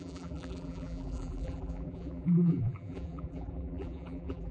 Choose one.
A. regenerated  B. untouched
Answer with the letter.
A